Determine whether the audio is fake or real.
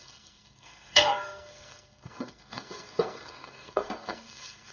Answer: fake